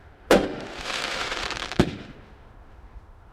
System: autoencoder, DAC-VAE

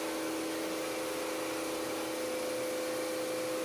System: none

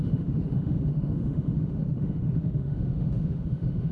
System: autoencoder, DAC-VAE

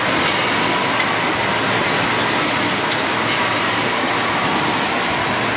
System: none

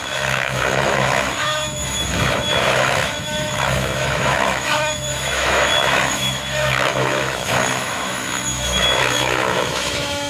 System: autoencoder, DAC-VAE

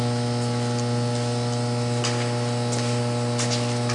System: none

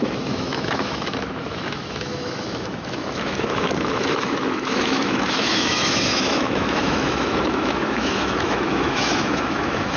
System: autoencoder, DAC-VAE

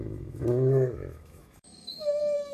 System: autoencoder, DAC-VAE